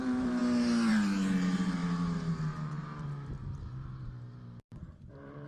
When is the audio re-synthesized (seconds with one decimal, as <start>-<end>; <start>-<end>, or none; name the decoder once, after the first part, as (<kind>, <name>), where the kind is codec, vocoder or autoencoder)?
0.0-0.4 (vocoder, BigVGAN v2); 0.9-5.5